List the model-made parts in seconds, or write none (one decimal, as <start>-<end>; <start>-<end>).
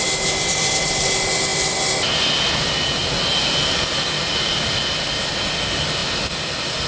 none